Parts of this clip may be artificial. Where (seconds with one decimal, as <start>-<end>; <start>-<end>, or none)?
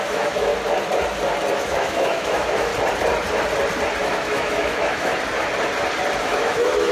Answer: 0.0-0.5; 1.5-2.7; 4.0-5.1; 6.2-6.9